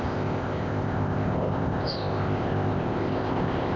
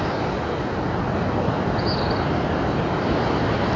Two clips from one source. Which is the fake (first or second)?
first